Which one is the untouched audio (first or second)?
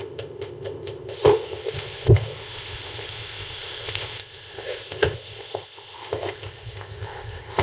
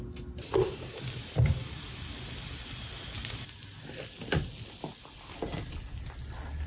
second